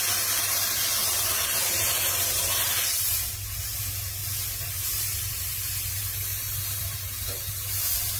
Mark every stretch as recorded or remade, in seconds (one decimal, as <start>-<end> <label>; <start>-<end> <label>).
0.0-8.2 recorded